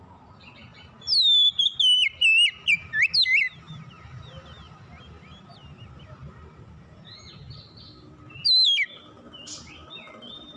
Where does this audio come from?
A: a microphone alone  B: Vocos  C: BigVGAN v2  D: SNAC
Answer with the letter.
A